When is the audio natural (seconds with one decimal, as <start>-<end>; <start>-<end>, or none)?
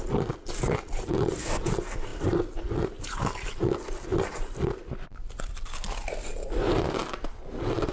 0.0-2.1; 3.2-4.1; 4.8-6.0